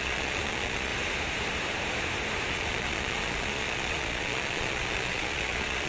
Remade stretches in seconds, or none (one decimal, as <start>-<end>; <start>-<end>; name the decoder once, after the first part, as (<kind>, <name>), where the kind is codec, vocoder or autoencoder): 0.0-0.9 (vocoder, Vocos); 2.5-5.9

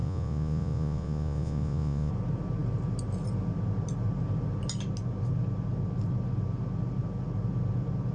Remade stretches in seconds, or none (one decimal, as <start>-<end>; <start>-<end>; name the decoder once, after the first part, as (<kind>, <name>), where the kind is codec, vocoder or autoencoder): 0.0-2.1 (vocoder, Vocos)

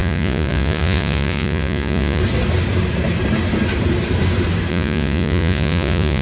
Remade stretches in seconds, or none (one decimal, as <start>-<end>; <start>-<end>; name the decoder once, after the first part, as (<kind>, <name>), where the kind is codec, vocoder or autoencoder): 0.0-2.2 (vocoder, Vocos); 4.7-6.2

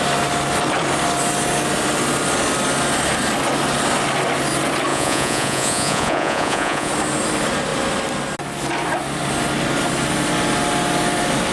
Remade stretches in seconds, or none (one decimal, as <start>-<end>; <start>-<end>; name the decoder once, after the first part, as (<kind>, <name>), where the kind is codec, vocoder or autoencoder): 4.9-6.9 (vocoder, Vocos)

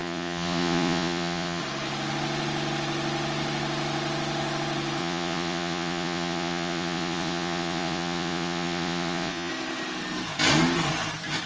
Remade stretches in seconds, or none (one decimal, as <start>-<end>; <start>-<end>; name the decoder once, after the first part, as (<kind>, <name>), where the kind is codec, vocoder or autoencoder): 0.0-1.6 (vocoder, Vocos); 5.0-9.5

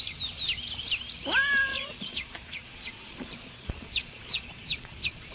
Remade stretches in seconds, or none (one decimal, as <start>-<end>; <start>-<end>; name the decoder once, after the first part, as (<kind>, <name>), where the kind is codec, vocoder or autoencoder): 1.7-5.3 (vocoder, Vocos)